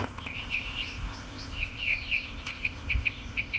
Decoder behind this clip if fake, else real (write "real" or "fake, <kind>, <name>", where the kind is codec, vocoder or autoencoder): fake, codec, ZipCodec